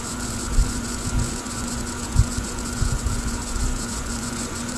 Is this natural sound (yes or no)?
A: no